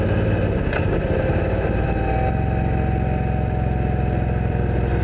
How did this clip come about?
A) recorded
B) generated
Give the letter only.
A